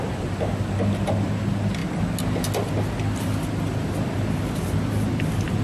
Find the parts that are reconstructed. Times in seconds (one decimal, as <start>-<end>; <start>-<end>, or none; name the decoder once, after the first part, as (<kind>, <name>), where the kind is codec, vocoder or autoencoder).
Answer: none